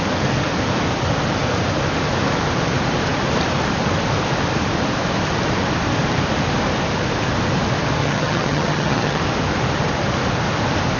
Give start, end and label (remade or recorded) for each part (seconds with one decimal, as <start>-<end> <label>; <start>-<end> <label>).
0.0-8.0 recorded; 8.0-9.2 remade; 9.2-11.0 recorded